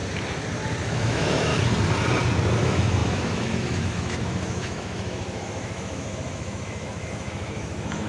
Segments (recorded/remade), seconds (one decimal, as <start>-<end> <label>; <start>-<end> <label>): 0.0-0.8 recorded; 0.8-1.5 remade; 1.5-2.6 recorded; 2.6-8.1 remade